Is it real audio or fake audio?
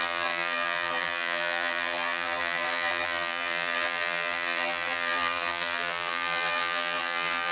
fake